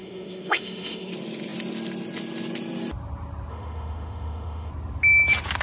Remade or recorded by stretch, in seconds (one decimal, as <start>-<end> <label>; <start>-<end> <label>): 0.0-1.1 remade; 1.1-3.5 recorded; 3.5-4.7 remade; 4.7-5.6 recorded